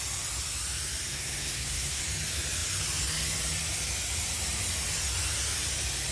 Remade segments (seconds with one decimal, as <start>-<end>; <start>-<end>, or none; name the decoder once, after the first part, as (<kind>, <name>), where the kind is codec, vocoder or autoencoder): 1.1-2.0 (codec, SNAC)